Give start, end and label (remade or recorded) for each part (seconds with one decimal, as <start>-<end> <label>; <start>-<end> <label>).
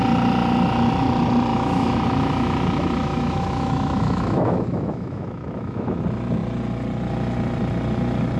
0.0-1.5 recorded; 1.5-6.0 remade; 6.0-8.4 recorded